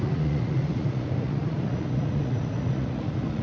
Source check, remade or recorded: remade